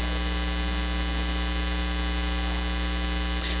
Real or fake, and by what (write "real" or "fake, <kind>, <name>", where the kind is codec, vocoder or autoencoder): real